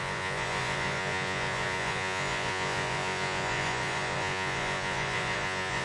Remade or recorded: remade